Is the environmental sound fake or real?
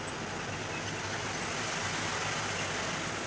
real